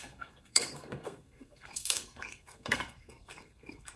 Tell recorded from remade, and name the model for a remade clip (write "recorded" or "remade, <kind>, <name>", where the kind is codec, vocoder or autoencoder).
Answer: remade, codec, SNAC